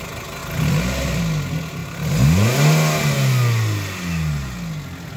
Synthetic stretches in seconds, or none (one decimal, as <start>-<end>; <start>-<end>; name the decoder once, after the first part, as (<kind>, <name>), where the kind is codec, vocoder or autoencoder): none